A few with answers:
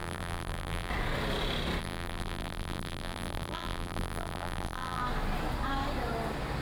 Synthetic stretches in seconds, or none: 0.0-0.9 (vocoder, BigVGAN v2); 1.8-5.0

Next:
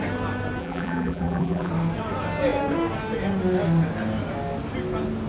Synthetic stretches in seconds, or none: 0.6-1.7 (vocoder, BigVGAN v2)

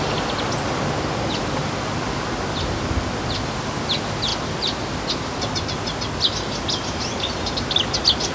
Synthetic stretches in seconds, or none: none

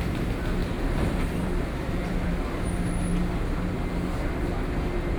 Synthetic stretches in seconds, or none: 0.6-2.3 (vocoder, BigVGAN v2)

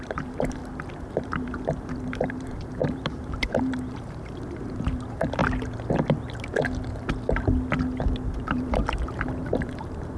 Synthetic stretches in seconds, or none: 0.0-0.6 (vocoder, BigVGAN v2); 1.2-5.4; 8.5-10.2

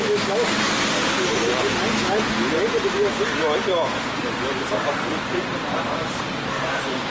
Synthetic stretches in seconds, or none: none

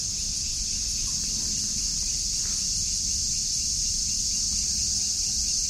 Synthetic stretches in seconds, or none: 0.0-0.8 (vocoder, BigVGAN v2)